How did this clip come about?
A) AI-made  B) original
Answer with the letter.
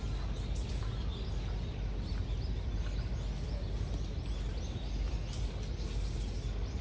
B